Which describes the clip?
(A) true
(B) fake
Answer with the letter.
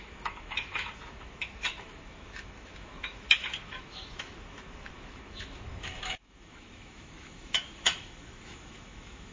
B